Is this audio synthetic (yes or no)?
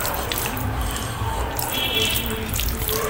yes